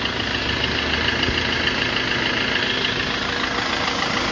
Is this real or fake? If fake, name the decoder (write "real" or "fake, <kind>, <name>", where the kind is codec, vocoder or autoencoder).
real